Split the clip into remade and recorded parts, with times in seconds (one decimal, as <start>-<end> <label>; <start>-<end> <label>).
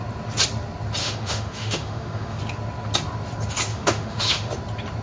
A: 0.0-1.0 recorded; 1.0-2.4 remade; 2.4-3.7 recorded; 3.7-4.5 remade; 4.5-5.0 recorded